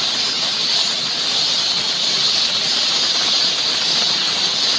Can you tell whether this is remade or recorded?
recorded